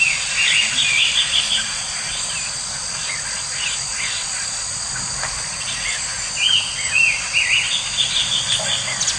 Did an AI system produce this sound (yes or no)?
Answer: no